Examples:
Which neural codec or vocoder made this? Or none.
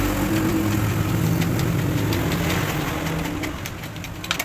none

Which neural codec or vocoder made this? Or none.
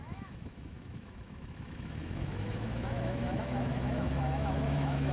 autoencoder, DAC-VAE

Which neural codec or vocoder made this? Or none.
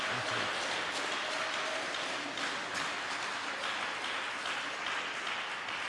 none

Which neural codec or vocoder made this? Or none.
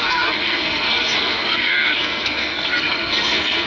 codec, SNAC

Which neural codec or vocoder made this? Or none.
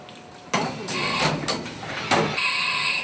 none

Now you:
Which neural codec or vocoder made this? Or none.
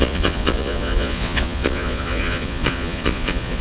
vocoder, Vocos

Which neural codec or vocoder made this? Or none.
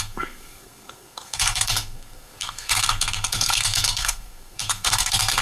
codec, SNAC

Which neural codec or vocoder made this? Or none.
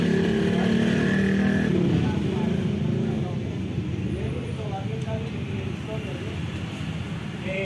none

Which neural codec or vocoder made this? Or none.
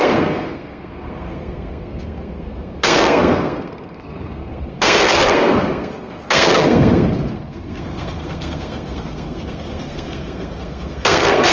codec, SNAC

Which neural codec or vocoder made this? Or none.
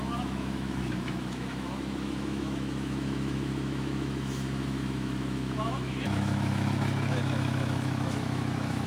autoencoder, DAC-VAE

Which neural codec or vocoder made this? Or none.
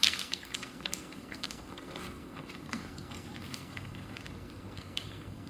codec, SNAC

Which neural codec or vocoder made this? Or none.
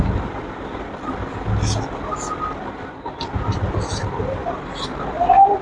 none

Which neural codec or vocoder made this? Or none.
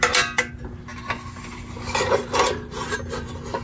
none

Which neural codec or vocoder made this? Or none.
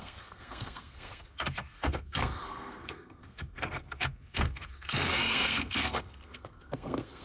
codec, SNAC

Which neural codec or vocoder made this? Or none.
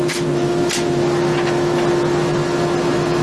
none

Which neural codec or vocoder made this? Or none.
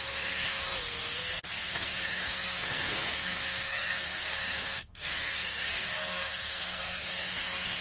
codec, SNAC